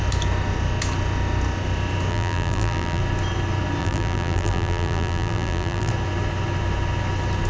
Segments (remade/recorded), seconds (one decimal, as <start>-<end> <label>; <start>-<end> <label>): 0.0-2.1 recorded; 2.1-3.0 remade; 3.0-3.8 recorded; 3.8-5.9 remade; 5.9-7.5 recorded